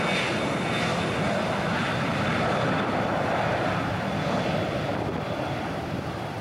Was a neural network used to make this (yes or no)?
no